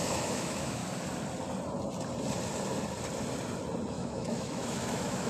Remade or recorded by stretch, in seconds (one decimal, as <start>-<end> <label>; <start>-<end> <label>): 0.0-0.8 remade; 0.8-3.9 recorded; 3.9-5.3 remade